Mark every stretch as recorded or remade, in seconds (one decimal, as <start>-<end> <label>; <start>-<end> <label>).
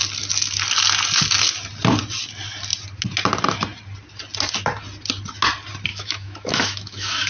0.0-5.9 recorded; 5.9-7.3 remade